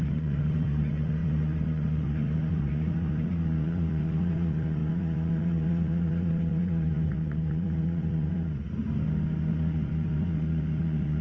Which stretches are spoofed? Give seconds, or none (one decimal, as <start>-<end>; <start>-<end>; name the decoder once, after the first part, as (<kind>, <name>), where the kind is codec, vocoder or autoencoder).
0.0-8.8 (vocoder, Vocos); 9.5-11.2